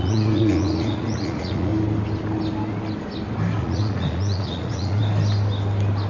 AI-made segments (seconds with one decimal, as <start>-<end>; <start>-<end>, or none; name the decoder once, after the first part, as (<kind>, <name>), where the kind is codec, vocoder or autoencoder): 0.0-1.7 (vocoder, Vocos); 3.6-5.0